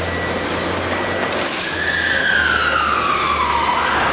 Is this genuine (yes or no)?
yes